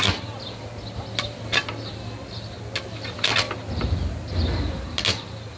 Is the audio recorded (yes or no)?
yes